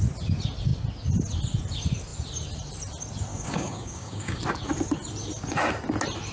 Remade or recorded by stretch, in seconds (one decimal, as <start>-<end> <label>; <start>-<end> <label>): 0.0-3.3 recorded; 3.3-4.4 remade; 4.4-6.3 recorded